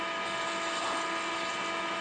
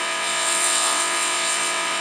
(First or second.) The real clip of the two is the first